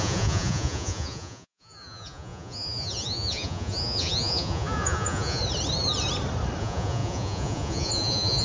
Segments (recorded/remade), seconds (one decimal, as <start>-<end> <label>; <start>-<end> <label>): 0.0-5.4 remade; 5.4-6.6 recorded; 6.6-8.4 remade

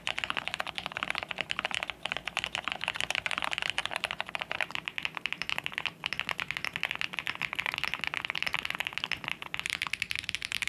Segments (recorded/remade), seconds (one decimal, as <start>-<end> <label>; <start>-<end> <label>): 0.0-3.8 recorded; 3.8-8.7 remade; 8.7-10.7 recorded

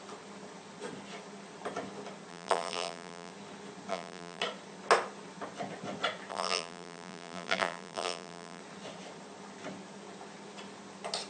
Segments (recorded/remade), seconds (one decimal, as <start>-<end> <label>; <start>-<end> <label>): 0.0-2.3 recorded; 2.3-3.3 remade; 3.3-3.9 recorded; 3.9-4.4 remade; 4.4-6.3 recorded; 6.3-8.6 remade; 8.6-11.3 recorded

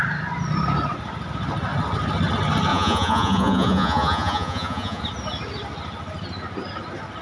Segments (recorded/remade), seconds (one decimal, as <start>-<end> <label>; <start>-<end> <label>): 0.0-2.7 recorded; 2.7-5.0 remade; 5.0-7.2 recorded

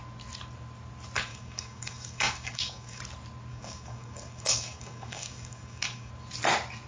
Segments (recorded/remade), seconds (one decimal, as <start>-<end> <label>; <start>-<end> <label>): 0.0-1.3 recorded; 1.3-3.0 remade; 3.0-3.5 recorded; 3.5-6.1 remade; 6.1-6.9 recorded

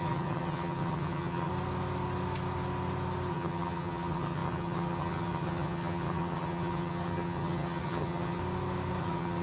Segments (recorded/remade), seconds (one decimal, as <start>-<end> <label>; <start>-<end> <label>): 0.0-1.5 remade; 1.5-3.3 recorded; 3.3-8.4 remade; 8.4-9.0 recorded; 9.0-9.4 remade

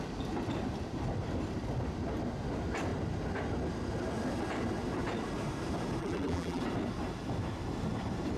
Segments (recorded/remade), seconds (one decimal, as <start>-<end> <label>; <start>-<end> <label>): 0.0-6.0 recorded; 6.0-6.6 remade; 6.6-8.4 recorded

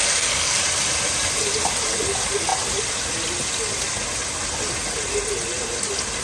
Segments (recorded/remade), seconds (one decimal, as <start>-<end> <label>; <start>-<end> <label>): 0.0-0.6 remade; 0.6-6.2 recorded